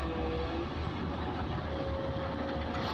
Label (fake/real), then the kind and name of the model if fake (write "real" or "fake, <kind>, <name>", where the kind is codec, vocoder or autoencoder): real